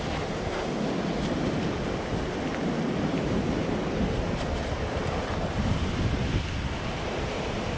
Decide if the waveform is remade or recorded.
recorded